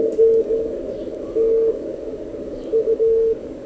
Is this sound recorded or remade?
remade